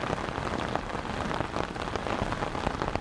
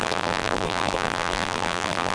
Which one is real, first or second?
first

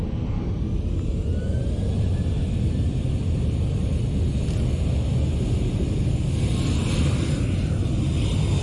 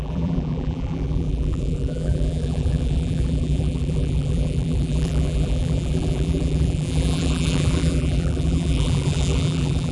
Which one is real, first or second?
first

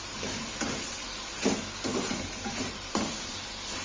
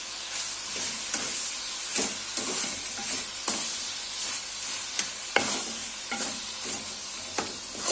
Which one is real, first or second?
second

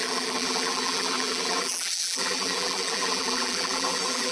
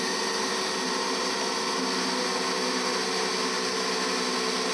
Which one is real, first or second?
second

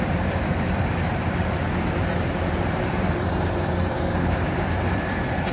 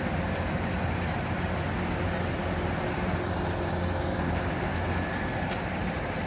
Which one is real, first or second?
second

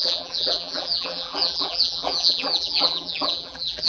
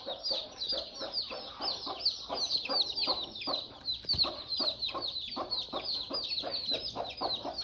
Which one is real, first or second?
second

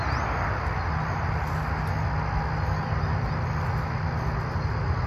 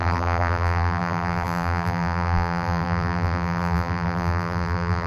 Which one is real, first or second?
first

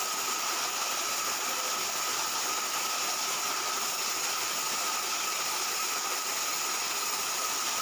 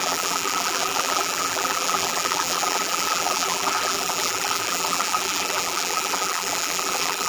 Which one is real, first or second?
first